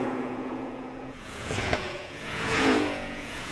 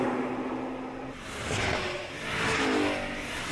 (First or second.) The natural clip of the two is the second